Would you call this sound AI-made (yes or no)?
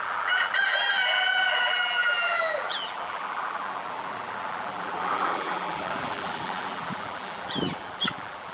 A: yes